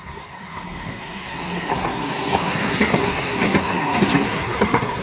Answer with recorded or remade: remade